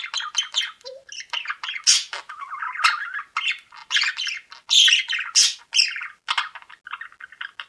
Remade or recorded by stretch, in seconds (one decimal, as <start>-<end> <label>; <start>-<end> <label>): 0.0-7.7 recorded